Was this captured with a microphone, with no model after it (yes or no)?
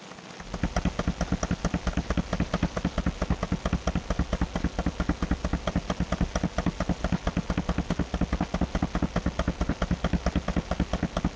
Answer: yes